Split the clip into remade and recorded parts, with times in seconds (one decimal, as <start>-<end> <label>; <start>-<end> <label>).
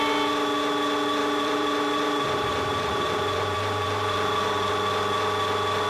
0.0-1.2 recorded; 1.2-4.7 remade; 4.7-5.9 recorded